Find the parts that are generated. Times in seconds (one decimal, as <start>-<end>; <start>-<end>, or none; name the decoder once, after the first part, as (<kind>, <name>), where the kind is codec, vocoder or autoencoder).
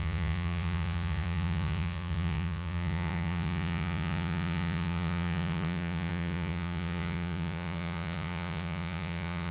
0.0-9.5 (vocoder, Vocos)